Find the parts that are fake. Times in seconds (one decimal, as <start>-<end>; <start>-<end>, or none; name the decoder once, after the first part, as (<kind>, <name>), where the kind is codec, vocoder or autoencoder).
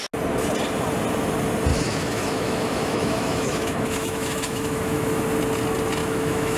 1.7-5.2 (autoencoder, DAC-VAE); 6.0-6.6